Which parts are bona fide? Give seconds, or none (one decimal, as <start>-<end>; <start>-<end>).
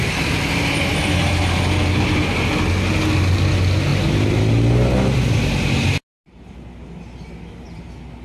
0.0-8.2